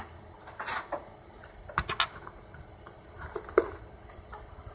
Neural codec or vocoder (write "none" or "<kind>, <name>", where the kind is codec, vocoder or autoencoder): none